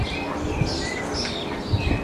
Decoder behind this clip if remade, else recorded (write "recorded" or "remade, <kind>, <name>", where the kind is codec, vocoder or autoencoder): recorded